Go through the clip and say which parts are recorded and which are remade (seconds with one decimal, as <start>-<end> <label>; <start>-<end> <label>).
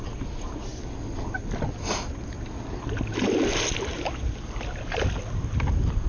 0.0-6.1 recorded